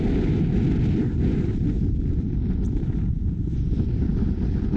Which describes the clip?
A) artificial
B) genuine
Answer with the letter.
B